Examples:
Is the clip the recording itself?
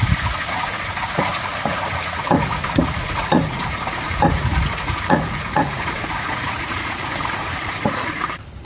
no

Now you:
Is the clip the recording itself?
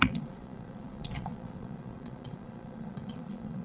no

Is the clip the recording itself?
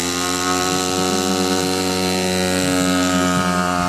no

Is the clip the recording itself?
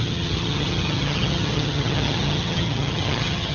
no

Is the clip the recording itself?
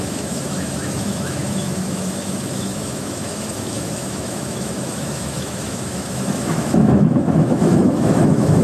no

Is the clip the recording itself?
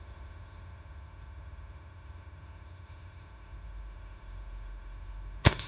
no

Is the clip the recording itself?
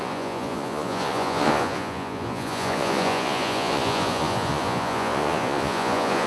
no